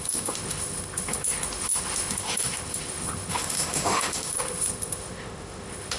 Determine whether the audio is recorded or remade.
remade